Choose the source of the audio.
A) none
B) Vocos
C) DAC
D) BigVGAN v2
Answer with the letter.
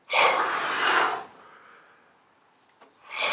A